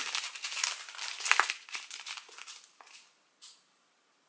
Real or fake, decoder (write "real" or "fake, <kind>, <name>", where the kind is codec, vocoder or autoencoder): real